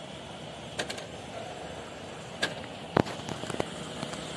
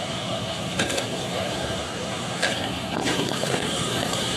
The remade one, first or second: second